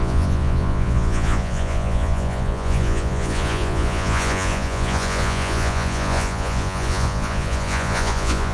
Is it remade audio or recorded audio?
remade